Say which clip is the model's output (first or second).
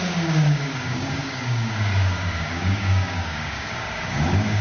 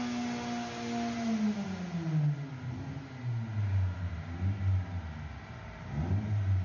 first